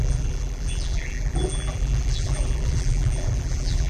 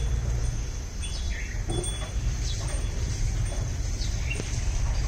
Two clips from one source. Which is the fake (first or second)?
first